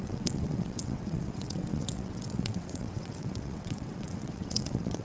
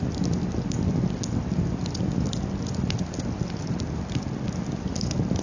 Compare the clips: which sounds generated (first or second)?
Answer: first